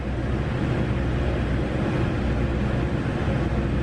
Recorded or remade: recorded